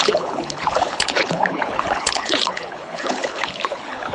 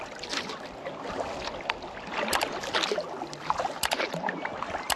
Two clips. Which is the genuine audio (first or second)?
second